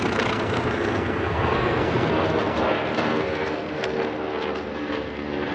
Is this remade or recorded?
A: remade